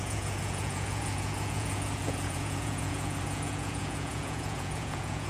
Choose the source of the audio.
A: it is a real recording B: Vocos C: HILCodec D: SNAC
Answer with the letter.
B